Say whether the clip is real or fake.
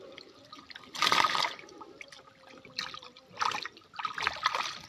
real